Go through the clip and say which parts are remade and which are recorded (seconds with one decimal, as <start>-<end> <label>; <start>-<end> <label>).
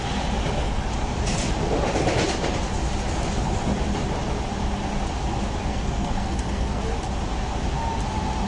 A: 0.0-5.7 recorded; 5.7-6.8 remade; 6.8-8.5 recorded